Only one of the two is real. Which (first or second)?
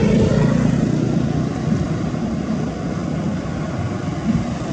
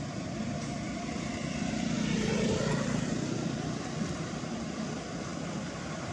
first